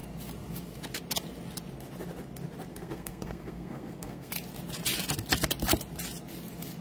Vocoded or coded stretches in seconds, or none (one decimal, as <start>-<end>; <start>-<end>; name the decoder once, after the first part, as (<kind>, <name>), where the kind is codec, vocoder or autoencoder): 2.7-4.3 (codec, SNAC)